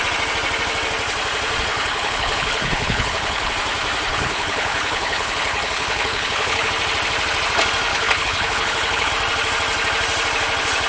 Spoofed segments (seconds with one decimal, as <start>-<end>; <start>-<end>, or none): 1.7-3.5; 4.1-6.7; 7.9-9.1